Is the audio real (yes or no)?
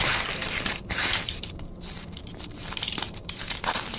no